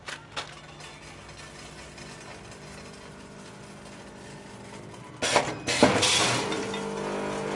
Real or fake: real